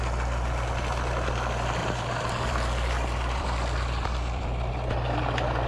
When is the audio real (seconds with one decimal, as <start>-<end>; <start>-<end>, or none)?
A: 0.0-1.8; 4.7-5.7